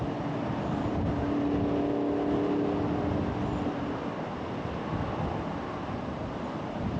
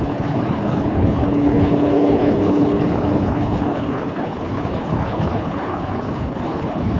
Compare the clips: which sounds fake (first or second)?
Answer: second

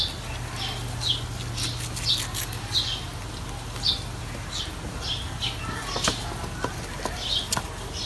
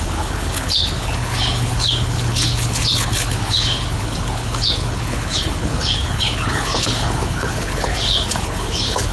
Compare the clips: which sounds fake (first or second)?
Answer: second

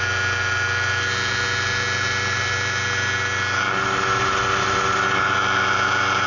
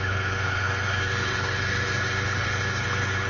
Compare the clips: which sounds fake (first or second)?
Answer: second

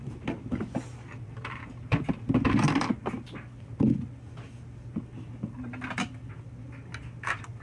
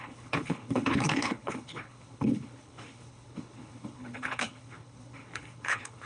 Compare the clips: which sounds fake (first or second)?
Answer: second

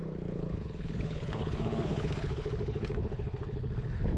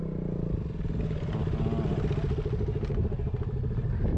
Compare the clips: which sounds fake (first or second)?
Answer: first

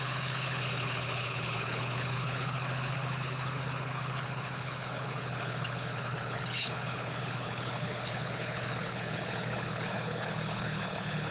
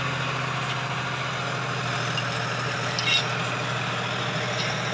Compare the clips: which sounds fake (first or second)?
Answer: first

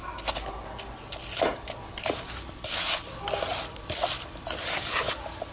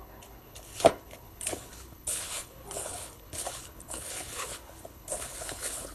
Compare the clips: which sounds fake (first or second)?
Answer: second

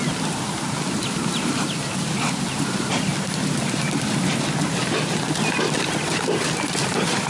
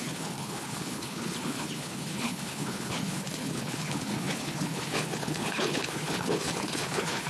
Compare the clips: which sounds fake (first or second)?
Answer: second